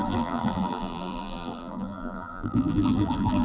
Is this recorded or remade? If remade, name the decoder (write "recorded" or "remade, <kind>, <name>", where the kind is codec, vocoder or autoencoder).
remade, vocoder, BigVGAN v2